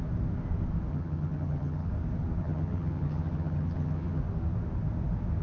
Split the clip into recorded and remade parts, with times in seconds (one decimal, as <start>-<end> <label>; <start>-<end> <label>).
0.0-0.9 recorded; 0.9-1.9 remade; 1.9-2.4 recorded; 2.4-4.2 remade; 4.2-5.4 recorded